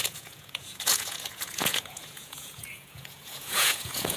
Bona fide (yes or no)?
no